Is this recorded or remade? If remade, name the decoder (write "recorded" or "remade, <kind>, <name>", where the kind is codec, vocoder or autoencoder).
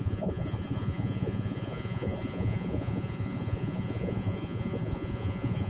remade, vocoder, Vocos